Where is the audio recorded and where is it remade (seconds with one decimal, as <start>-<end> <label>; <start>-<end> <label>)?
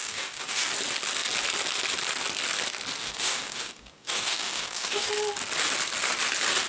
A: 0.0-0.7 remade; 0.7-3.0 recorded; 3.0-5.1 remade; 5.1-6.7 recorded